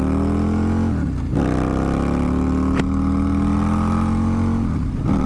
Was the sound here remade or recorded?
recorded